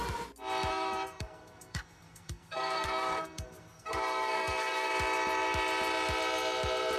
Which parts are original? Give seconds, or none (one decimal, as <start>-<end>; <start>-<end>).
0.0-0.7; 4.9-7.0